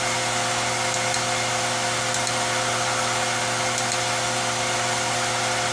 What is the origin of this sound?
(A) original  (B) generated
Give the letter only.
A